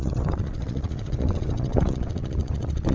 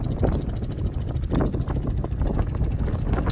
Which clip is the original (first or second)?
second